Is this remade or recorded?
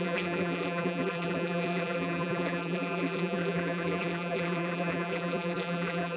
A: remade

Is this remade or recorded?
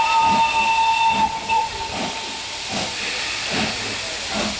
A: recorded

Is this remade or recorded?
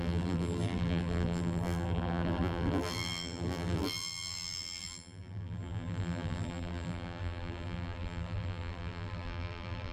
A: remade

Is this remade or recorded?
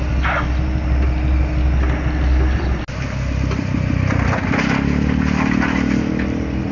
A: recorded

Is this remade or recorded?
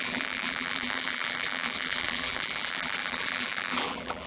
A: remade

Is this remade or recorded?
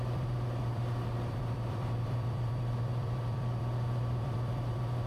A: remade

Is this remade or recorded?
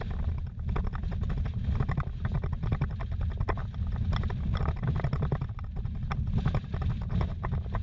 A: recorded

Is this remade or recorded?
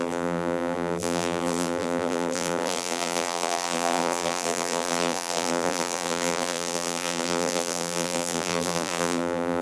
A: remade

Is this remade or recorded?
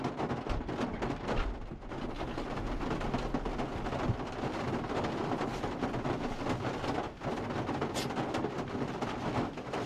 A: recorded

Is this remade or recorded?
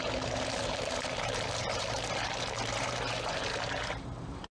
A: remade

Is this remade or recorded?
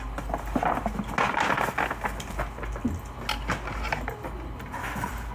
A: recorded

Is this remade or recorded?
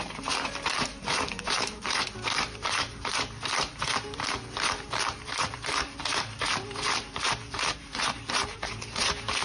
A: remade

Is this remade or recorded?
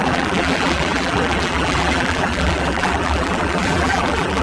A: remade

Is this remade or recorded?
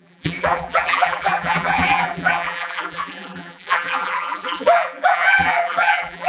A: remade